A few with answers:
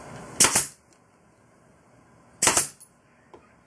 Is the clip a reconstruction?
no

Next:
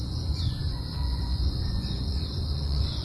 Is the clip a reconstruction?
yes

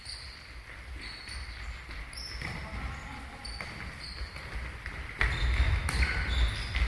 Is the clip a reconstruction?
no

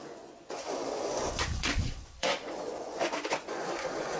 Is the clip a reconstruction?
yes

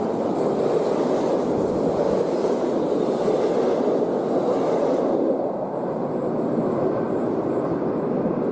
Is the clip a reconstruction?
no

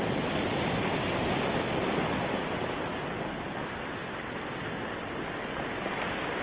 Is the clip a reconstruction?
no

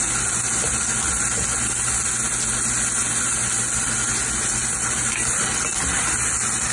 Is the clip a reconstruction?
no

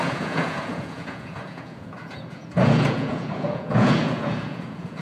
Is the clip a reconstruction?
yes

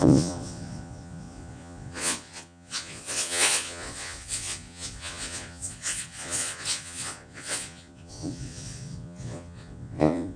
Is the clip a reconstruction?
yes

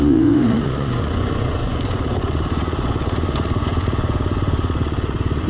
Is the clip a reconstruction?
yes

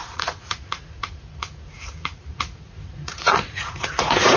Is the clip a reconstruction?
yes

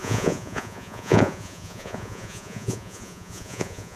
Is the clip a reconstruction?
yes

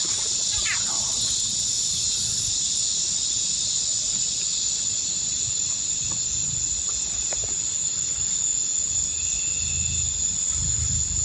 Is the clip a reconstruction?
no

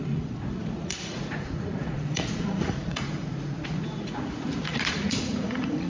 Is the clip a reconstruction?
yes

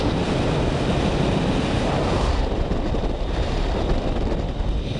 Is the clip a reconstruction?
no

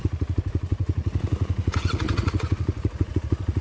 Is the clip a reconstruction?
yes